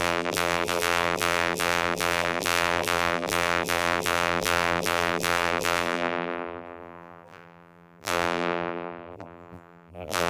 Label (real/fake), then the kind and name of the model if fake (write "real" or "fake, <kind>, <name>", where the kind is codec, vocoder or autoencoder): fake, vocoder, BigVGAN v2